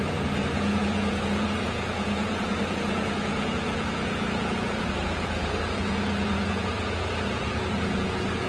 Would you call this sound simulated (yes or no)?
yes